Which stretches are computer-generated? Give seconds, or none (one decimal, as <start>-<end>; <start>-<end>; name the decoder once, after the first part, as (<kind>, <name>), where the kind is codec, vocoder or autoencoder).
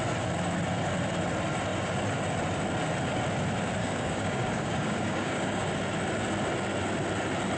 3.8-5.7 (codec, DAC)